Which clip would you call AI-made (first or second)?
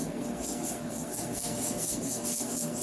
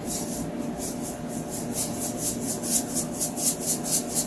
first